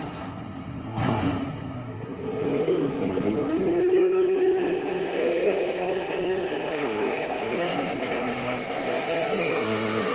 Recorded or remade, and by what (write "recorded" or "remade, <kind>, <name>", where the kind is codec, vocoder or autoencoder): remade, codec, SNAC